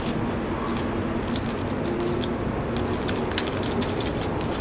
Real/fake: real